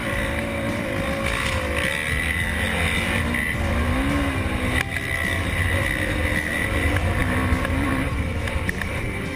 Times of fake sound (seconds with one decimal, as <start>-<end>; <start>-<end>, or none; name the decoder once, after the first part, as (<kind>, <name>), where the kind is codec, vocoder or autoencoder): none